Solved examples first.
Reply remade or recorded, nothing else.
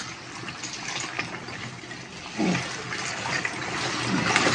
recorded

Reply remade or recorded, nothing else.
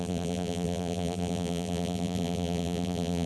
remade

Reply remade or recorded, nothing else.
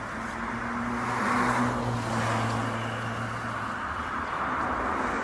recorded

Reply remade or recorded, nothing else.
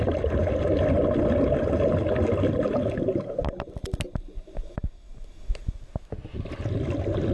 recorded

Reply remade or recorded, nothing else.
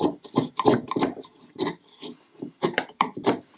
remade